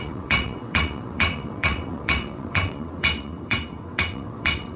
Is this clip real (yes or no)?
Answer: no